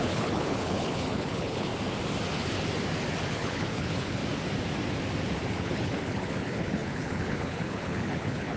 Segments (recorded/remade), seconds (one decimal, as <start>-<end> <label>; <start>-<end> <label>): 0.0-1.7 remade; 1.7-3.3 recorded; 3.3-4.2 remade; 4.2-5.5 recorded; 5.5-8.6 remade